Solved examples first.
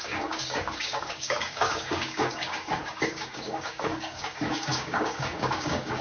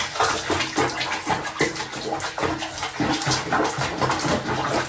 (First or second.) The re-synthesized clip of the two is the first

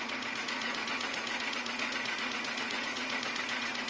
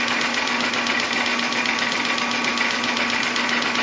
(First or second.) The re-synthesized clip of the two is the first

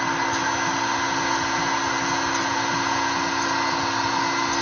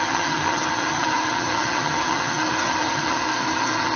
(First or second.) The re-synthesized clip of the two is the second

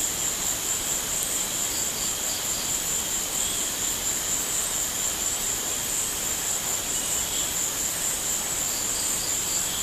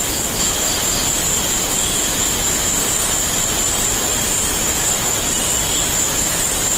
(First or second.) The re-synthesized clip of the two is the first